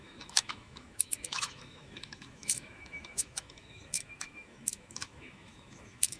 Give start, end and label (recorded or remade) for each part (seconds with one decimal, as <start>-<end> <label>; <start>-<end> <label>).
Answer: 0.0-6.2 remade